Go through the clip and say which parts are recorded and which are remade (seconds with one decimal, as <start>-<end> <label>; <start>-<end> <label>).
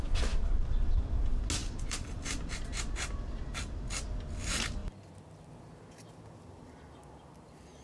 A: 0.0-1.6 recorded; 1.6-2.8 remade; 2.8-7.8 recorded